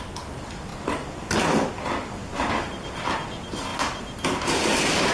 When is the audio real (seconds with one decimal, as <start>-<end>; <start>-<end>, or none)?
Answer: 0.0-5.1